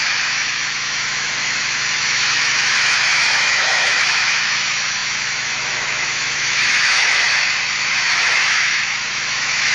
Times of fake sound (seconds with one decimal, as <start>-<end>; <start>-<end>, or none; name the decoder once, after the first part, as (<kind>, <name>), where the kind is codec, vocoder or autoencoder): 0.0-9.7 (autoencoder, DAC-VAE)